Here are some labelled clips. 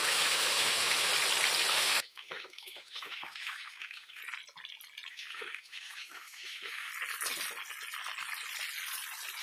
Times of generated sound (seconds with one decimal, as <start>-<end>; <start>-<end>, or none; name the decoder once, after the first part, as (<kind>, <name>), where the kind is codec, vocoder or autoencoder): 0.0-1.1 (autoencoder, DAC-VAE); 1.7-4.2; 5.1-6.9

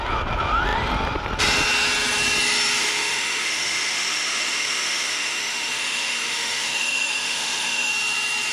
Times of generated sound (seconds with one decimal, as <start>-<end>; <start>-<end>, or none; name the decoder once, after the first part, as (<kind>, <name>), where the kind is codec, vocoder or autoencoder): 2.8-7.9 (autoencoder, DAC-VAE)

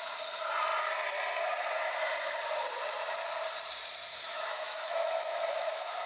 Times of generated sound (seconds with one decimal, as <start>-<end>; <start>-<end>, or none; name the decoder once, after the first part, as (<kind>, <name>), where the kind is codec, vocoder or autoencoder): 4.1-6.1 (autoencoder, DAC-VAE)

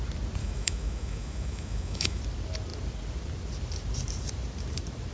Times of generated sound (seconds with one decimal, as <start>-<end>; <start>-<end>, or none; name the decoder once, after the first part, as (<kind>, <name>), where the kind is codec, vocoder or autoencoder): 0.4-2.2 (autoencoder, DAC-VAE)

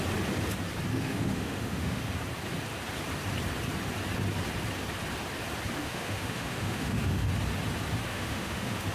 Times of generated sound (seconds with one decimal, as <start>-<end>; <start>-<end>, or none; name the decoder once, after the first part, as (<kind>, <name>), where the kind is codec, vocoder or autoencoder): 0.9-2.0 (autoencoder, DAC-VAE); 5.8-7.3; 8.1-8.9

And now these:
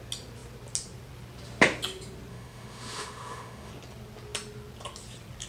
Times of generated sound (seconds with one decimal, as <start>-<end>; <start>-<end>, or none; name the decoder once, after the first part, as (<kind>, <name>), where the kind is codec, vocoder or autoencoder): 2.3-3.7 (autoencoder, DAC-VAE)